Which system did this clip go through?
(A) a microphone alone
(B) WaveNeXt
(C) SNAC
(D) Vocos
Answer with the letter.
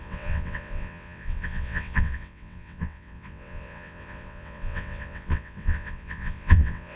B